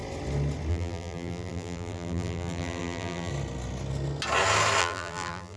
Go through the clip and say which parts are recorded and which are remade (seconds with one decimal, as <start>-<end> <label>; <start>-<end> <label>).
0.0-0.7 recorded; 0.7-3.3 remade; 3.3-4.8 recorded; 4.8-5.6 remade